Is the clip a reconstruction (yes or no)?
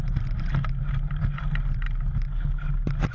no